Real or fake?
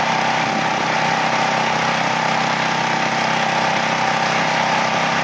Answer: real